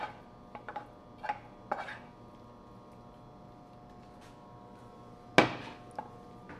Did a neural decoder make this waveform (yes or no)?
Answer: no